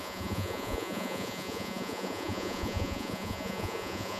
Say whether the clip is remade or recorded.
remade